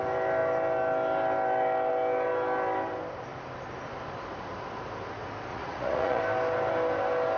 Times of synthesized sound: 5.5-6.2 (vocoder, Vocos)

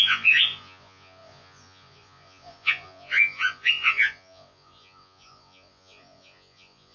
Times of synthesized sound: 0.0-6.9 (vocoder, Vocos)

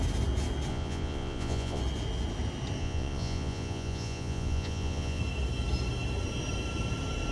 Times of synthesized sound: 0.7-1.8 (vocoder, Vocos); 2.8-5.2

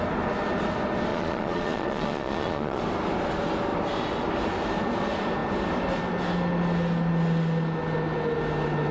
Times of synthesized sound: 1.1-2.8 (vocoder, Vocos)

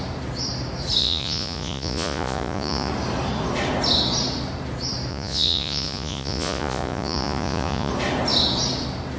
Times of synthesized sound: 1.0-2.9 (vocoder, Vocos); 5.1-7.9

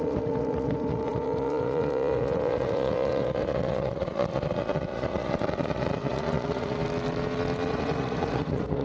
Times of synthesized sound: 0.0-6.8 (vocoder, Vocos); 7.7-8.8

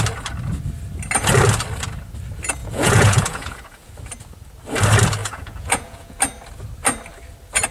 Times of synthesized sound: 2.6-3.9 (vocoder, Vocos); 5.2-6.2

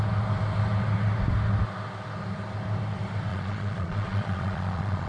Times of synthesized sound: 3.3-5.1 (vocoder, Vocos)